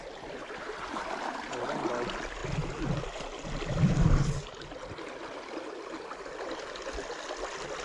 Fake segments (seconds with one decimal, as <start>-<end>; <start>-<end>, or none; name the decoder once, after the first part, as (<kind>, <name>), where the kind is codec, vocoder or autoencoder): none